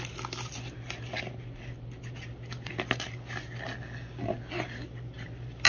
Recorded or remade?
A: recorded